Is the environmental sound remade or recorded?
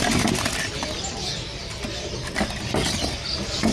remade